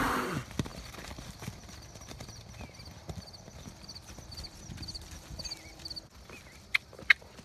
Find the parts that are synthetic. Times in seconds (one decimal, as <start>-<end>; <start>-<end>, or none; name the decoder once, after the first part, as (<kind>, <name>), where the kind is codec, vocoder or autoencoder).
0.7-1.2 (vocoder, BigVGAN v2); 1.6-5.9